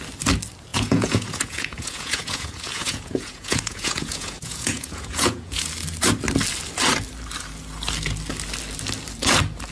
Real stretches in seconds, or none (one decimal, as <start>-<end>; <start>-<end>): 0.0-0.7; 5.7-9.7